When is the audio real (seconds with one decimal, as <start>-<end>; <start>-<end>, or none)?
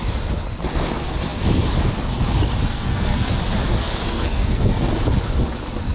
0.0-2.7; 3.4-3.8; 4.9-5.9